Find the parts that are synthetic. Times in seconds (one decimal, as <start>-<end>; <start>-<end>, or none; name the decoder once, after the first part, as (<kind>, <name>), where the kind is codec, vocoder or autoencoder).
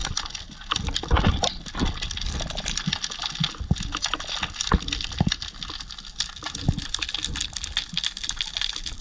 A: 7.4-9.0 (vocoder, BigVGAN v2)